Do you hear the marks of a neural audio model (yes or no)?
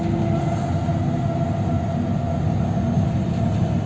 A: no